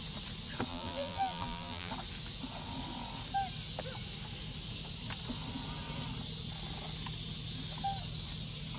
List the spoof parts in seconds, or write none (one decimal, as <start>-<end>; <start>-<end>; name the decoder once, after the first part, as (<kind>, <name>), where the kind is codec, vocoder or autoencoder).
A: 0.7-1.9 (vocoder, BigVGAN v2)